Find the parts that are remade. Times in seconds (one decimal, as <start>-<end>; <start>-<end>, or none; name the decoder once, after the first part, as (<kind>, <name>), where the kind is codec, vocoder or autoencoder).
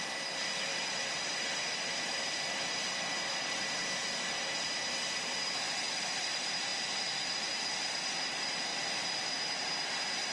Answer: none